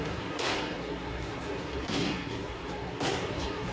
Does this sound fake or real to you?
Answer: fake